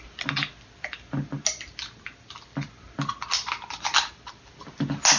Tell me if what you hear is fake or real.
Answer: real